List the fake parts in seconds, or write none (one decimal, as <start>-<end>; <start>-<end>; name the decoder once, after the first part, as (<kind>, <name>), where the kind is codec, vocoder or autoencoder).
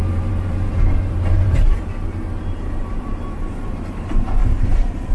0.0-5.1 (vocoder, BigVGAN v2)